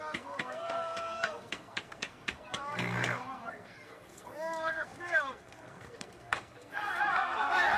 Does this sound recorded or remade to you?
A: remade